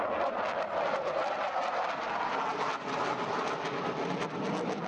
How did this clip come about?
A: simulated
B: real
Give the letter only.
B